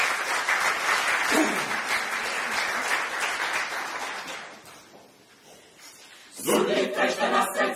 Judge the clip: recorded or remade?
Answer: recorded